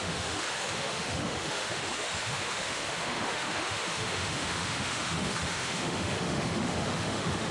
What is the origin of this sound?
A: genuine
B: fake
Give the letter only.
B